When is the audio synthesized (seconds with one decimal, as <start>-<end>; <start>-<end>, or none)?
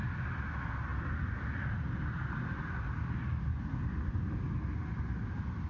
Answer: none